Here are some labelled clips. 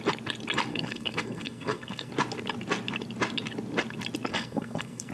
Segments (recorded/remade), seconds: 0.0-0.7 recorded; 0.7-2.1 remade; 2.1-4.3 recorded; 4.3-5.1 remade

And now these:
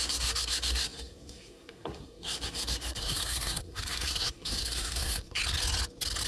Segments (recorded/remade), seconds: 0.0-5.4 remade; 5.4-6.3 recorded

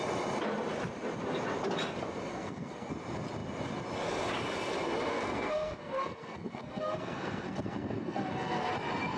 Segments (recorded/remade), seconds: 0.0-2.3 recorded; 2.3-2.9 remade; 2.9-5.1 recorded; 5.1-8.7 remade; 8.7-9.2 recorded

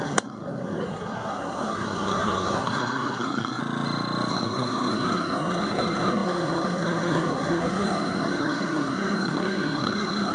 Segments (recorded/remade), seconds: 0.0-3.6 remade; 3.6-4.3 recorded; 4.3-10.3 remade

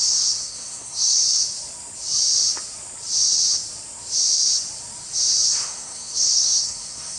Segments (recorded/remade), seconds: 0.0-1.2 remade; 1.2-5.5 recorded; 5.5-7.2 remade

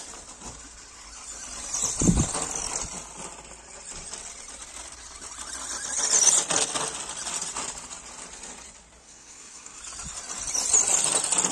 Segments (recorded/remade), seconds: 0.0-9.0 recorded; 9.0-9.8 remade; 9.8-11.5 recorded

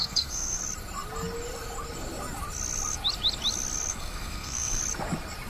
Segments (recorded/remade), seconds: 0.0-0.6 remade; 0.6-3.9 recorded; 3.9-4.8 remade; 4.8-5.5 recorded

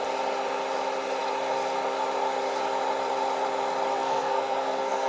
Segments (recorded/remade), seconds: 0.0-3.9 recorded; 3.9-5.1 remade